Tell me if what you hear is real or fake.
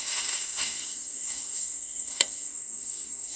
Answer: fake